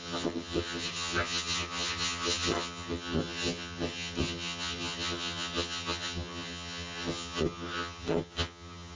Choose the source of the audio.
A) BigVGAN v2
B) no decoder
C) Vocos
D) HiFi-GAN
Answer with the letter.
D